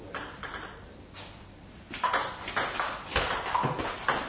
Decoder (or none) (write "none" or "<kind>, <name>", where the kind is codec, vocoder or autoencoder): none